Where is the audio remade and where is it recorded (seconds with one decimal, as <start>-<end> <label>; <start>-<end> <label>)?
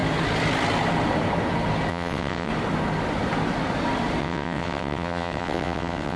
0.0-1.9 recorded; 1.9-2.5 remade; 2.5-4.2 recorded; 4.2-6.2 remade